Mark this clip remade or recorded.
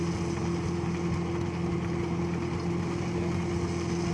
recorded